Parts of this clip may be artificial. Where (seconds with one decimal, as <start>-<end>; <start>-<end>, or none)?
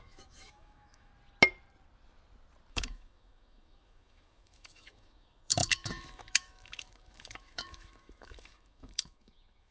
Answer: 0.0-1.1; 2.7-9.7